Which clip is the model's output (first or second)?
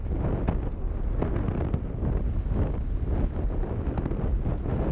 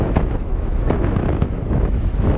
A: second